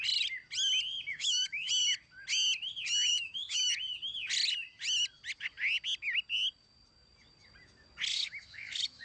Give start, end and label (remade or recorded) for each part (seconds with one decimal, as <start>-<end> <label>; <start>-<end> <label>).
0.0-1.1 recorded; 1.1-1.7 remade; 1.7-3.1 recorded; 3.1-3.7 remade; 3.7-8.1 recorded; 8.1-9.0 remade